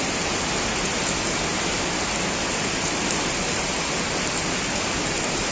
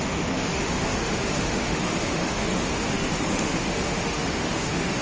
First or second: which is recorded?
first